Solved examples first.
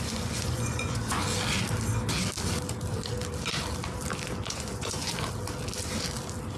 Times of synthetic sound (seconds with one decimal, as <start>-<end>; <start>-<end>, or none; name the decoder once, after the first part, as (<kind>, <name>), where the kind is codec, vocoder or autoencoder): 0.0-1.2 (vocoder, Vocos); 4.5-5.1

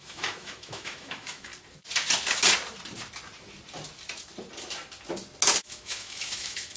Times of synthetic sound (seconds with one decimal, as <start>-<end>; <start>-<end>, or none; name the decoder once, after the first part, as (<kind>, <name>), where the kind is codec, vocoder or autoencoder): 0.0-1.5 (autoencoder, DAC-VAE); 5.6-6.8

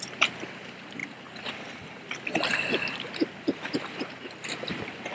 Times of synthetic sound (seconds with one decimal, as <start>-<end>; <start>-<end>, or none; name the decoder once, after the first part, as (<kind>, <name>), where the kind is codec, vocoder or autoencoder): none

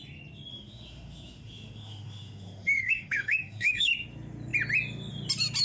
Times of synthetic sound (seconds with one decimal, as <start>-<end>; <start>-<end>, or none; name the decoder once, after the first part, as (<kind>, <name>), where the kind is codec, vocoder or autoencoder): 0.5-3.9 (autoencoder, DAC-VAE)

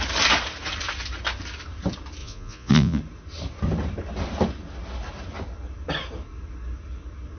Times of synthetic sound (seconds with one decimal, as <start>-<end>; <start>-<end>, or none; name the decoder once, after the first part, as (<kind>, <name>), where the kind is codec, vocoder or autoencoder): 2.2-3.0 (vocoder, Vocos)